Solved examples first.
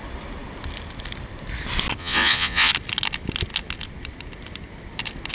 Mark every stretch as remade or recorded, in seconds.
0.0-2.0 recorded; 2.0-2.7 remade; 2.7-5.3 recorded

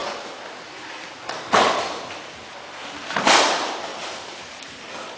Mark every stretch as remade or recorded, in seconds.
0.0-5.2 recorded

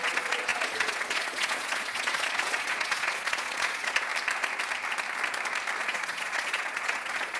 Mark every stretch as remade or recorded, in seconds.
0.0-4.1 remade; 4.1-5.8 recorded; 5.8-7.4 remade

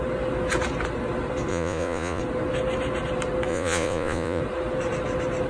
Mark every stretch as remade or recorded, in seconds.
0.0-1.5 recorded; 1.5-2.2 remade; 2.2-3.5 recorded; 3.5-4.4 remade; 4.4-5.5 recorded

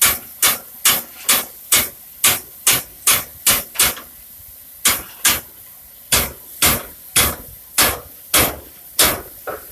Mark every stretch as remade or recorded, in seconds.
0.0-9.7 recorded